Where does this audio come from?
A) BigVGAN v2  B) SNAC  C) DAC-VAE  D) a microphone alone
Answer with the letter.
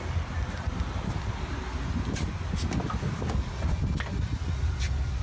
D